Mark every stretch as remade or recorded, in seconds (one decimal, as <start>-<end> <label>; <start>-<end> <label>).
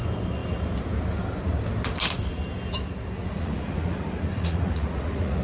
0.0-3.2 recorded; 3.2-5.4 remade